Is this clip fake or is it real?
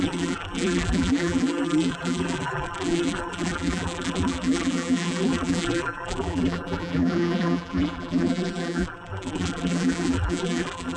fake